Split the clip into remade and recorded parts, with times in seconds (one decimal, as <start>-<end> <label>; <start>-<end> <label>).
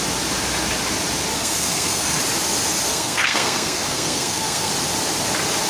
0.0-1.3 recorded; 1.3-2.2 remade; 2.2-2.9 recorded; 2.9-4.7 remade; 4.7-5.7 recorded